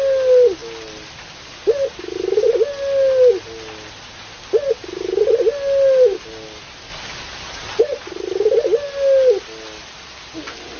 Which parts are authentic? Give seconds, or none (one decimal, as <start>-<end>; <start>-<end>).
0.0-10.8